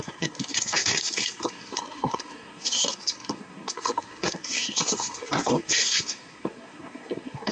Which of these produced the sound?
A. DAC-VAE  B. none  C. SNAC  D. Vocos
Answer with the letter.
C